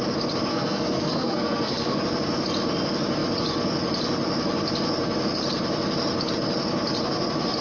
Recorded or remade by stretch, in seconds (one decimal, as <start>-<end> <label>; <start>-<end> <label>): 0.0-0.5 recorded; 0.5-2.0 remade; 2.0-7.6 recorded